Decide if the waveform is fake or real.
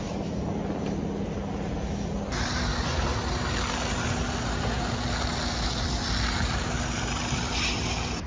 real